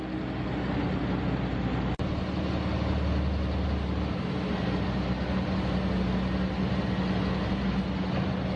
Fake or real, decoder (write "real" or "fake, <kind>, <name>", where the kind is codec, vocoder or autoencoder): real